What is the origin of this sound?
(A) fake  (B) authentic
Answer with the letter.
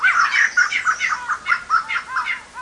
B